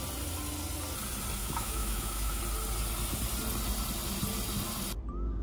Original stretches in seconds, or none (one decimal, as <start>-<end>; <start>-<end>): 0.0-1.4; 2.4-5.4